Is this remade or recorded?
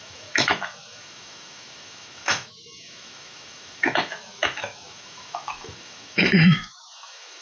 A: remade